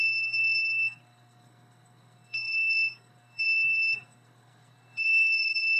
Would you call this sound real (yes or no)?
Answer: no